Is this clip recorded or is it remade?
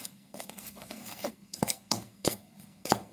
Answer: remade